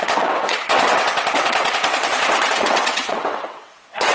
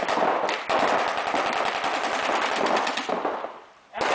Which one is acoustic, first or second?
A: second